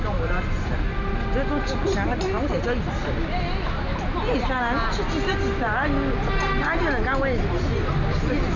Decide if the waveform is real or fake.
real